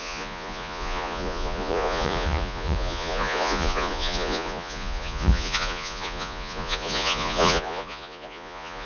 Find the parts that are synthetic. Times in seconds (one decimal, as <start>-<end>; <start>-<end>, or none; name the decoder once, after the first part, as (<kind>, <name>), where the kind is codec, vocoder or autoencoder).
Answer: 0.0-8.9 (vocoder, Vocos)